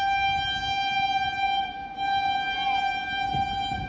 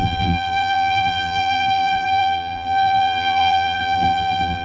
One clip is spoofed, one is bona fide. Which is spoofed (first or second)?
second